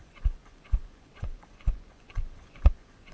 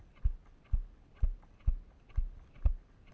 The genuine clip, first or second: second